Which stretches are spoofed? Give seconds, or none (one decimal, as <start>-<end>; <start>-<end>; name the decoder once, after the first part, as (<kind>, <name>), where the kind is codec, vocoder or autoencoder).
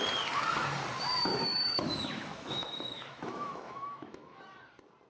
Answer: 1.3-4.4 (autoencoder, DAC-VAE)